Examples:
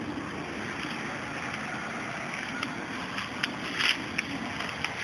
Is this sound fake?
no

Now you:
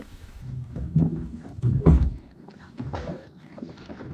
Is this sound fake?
yes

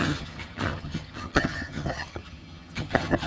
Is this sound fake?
yes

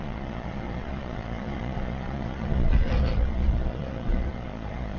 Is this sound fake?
yes